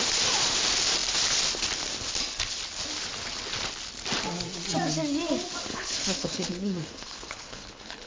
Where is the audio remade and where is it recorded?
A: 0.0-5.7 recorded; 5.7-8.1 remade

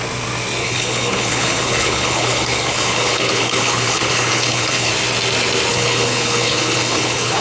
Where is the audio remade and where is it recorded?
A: 0.0-0.6 recorded; 0.6-4.9 remade; 4.9-5.7 recorded; 5.7-7.4 remade

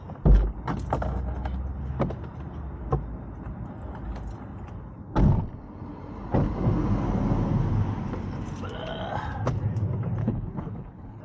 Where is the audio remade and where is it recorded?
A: 0.0-10.2 recorded; 10.2-11.2 remade